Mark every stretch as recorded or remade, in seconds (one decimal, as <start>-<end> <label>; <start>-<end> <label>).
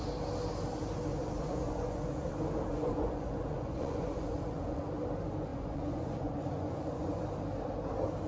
0.0-1.1 recorded; 1.1-2.3 remade; 2.3-2.7 recorded; 2.7-4.8 remade; 4.8-5.5 recorded; 5.5-7.2 remade; 7.2-8.3 recorded